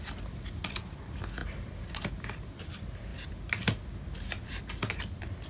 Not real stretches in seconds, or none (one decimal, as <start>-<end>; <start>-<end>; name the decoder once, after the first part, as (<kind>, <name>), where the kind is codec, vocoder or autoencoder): none